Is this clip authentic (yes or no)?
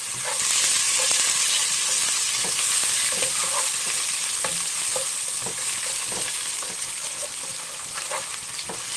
yes